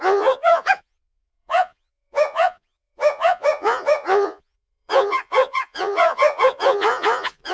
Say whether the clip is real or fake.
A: fake